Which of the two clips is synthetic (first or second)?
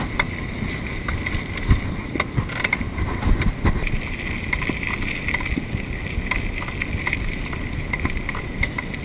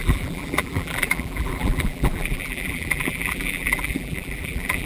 second